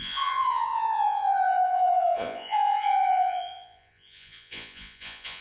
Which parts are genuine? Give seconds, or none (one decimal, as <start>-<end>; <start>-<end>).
none